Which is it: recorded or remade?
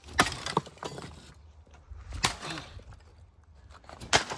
recorded